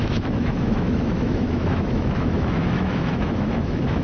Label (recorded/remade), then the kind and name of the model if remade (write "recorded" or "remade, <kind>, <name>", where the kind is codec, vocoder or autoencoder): remade, autoencoder, DAC-VAE